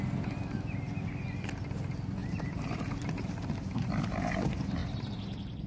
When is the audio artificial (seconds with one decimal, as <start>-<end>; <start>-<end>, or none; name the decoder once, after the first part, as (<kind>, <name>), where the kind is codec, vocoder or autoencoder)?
2.2-2.8 (vocoder, BigVGAN v2); 4.8-5.7